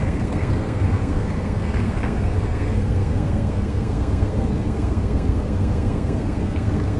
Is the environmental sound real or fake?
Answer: fake